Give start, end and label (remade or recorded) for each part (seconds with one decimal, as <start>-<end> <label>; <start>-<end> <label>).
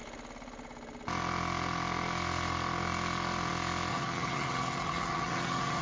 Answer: 0.0-3.9 recorded; 3.9-5.8 remade